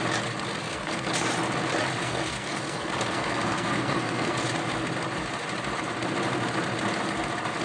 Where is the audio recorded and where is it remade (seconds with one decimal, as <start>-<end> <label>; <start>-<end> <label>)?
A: 0.0-0.6 recorded; 0.6-1.1 remade; 1.1-2.0 recorded; 2.0-4.4 remade; 4.4-7.6 recorded